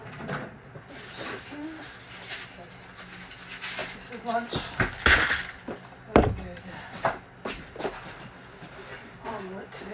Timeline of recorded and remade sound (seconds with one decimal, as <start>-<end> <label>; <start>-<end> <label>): 0.0-8.9 recorded; 8.9-9.9 remade